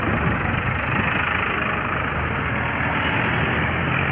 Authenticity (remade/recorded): recorded